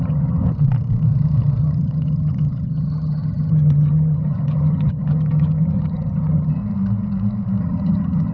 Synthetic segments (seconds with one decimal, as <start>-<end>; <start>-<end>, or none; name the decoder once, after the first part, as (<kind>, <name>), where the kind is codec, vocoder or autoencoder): 0.0-0.4 (vocoder, HiFi-GAN); 1.6-6.6; 7.6-8.3

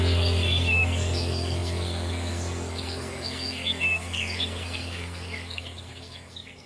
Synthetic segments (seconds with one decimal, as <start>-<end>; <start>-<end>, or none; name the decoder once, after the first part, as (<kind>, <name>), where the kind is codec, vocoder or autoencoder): 0.0-6.7 (codec, SNAC)

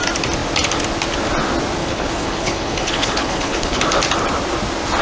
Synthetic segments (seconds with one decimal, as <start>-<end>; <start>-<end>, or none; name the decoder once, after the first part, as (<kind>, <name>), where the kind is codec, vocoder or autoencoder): 1.8-3.8 (codec, HILCodec)

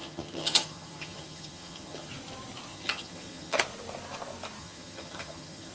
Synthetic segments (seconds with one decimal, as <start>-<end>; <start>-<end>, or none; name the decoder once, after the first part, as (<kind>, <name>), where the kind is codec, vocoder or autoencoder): 0.0-2.1 (vocoder, HiFi-GAN); 2.7-3.6; 4.6-5.7

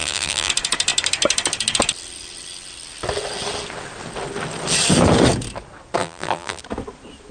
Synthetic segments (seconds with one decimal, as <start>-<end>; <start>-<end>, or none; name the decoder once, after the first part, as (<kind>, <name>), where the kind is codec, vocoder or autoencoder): 0.0-0.5 (vocoder, BigVGAN v2); 6.0-6.6

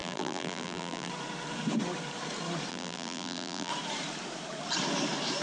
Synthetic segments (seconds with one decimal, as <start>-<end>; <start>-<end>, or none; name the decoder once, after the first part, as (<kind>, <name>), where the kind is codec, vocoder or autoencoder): 0.0-1.1 (vocoder, BigVGAN v2); 2.7-3.7